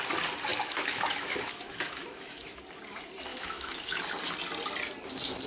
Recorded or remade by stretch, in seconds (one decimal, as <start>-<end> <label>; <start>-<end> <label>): 0.0-0.5 recorded; 0.5-2.6 remade; 2.6-3.3 recorded; 3.3-4.0 remade; 4.0-5.5 recorded